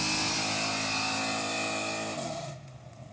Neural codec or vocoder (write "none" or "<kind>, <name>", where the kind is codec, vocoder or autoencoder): none